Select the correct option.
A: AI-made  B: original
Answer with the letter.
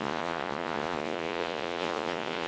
A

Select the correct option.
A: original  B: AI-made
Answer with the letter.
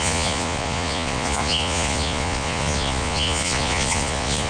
B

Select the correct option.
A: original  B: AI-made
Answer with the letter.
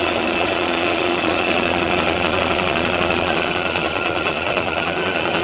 B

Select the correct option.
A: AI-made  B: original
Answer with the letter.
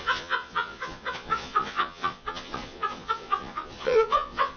A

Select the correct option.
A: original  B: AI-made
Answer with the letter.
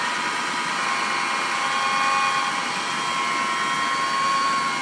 A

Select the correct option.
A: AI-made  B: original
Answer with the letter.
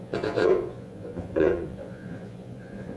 A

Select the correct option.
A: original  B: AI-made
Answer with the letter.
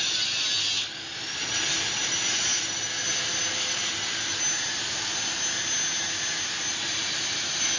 A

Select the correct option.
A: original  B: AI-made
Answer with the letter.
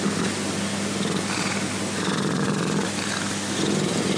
A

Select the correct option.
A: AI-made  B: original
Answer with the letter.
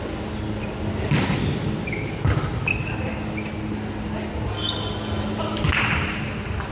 B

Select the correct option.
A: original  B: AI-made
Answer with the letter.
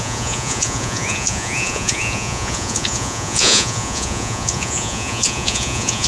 B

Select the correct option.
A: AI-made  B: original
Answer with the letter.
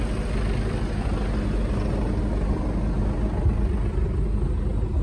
B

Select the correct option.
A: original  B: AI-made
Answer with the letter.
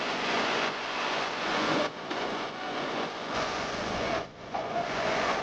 B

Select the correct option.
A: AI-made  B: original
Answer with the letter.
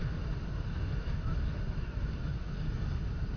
B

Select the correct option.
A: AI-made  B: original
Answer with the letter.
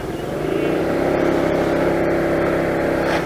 B